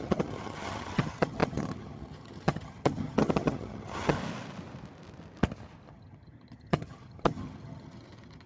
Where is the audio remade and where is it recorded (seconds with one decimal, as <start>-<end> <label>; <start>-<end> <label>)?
0.0-4.2 remade; 4.2-5.9 recorded; 5.9-8.5 remade

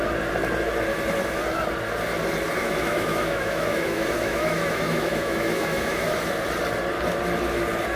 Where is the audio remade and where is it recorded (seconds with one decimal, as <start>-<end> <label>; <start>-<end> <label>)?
0.0-2.6 recorded; 2.6-6.1 remade; 6.1-8.0 recorded

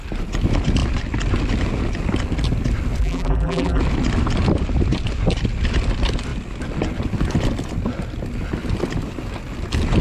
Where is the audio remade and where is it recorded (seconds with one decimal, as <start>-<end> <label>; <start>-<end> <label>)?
0.0-3.0 recorded; 3.0-3.8 remade; 3.8-10.0 recorded

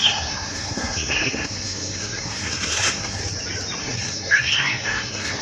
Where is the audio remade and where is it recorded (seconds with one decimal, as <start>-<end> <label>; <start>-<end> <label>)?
0.0-3.2 remade; 3.2-3.8 recorded; 3.8-5.4 remade